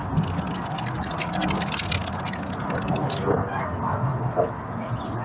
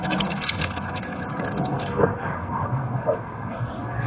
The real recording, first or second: first